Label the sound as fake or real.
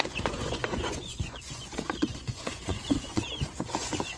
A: fake